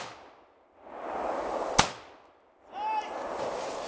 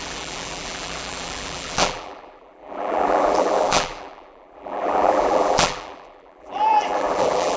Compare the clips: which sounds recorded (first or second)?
first